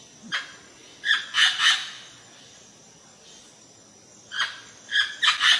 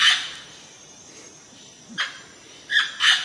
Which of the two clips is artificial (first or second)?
second